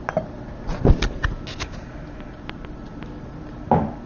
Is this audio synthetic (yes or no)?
no